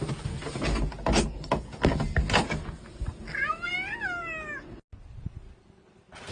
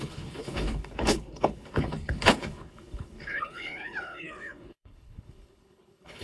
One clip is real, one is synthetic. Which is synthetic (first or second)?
second